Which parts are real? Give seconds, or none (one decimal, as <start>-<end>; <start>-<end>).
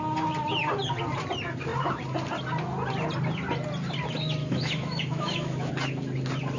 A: 0.0-4.4; 5.7-6.6